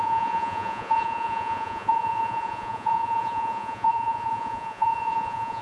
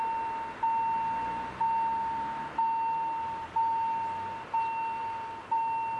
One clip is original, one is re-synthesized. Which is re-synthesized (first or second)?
first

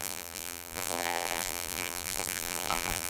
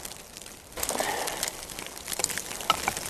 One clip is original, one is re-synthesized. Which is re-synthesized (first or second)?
first